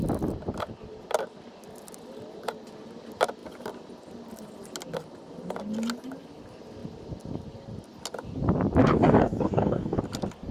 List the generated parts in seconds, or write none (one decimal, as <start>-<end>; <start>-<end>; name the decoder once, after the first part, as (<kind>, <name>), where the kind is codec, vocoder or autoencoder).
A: 8.8-10.0 (codec, DAC)